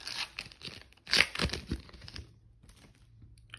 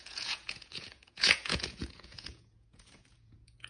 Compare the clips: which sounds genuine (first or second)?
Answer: first